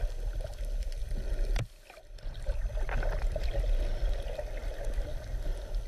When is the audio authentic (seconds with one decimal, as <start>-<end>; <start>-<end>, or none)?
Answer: 0.0-1.0; 2.7-5.9